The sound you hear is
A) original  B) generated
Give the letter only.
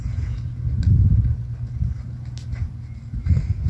A